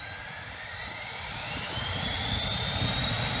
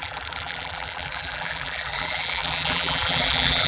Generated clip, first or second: second